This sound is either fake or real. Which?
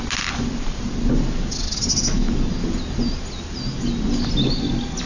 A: real